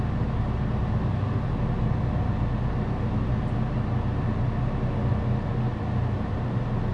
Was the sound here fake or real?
real